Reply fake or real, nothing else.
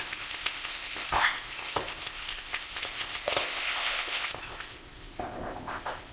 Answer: fake